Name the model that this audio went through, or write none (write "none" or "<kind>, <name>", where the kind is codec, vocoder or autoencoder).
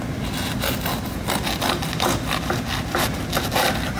none